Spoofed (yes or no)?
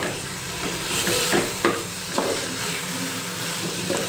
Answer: yes